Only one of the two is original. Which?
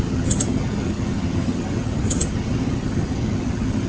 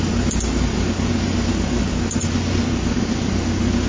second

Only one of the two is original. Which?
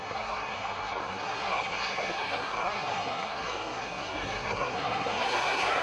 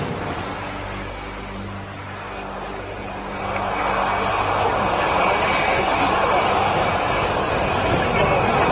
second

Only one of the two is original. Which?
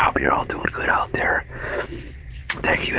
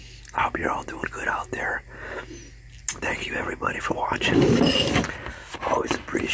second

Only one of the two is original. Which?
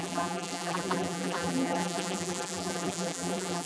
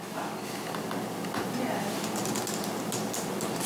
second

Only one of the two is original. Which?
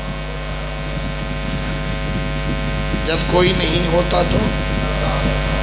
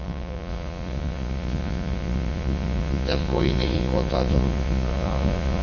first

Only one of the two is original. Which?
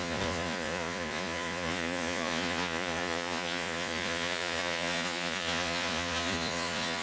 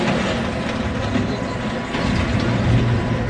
second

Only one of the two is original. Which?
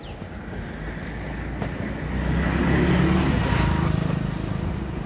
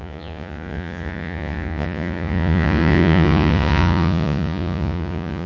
first